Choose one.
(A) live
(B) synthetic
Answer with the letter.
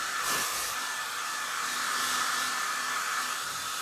A